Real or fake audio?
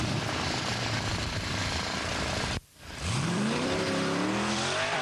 fake